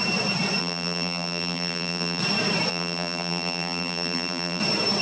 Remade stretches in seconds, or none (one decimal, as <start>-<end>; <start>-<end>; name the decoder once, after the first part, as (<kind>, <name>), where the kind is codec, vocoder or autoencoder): 0.6-2.2 (vocoder, BigVGAN v2); 2.7-4.6